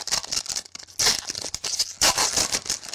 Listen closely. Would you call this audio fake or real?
real